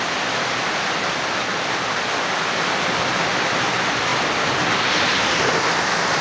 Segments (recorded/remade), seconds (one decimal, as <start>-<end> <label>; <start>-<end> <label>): 0.0-6.2 recorded